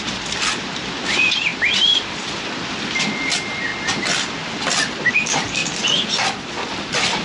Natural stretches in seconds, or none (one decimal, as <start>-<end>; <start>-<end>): 3.7-5.1; 5.6-7.2